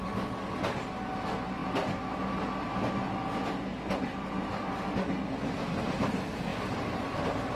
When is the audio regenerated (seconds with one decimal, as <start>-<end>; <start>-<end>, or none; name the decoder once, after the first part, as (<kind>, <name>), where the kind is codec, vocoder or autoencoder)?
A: none